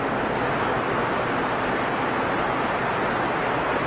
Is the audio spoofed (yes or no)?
no